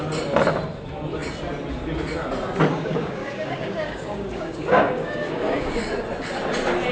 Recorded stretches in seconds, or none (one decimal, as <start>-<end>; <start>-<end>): 0.0-2.7; 5.9-6.9